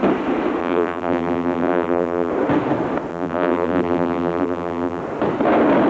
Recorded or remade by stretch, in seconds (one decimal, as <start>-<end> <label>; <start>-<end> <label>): 0.0-0.6 recorded; 0.6-2.3 remade; 2.3-3.1 recorded; 3.1-5.0 remade; 5.0-5.9 recorded